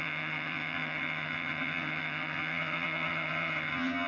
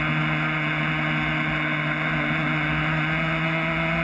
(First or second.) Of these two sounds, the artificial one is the first